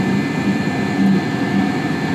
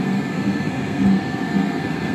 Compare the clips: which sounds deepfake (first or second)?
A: second